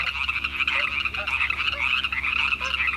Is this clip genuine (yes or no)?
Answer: yes